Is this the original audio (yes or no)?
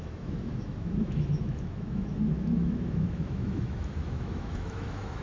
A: no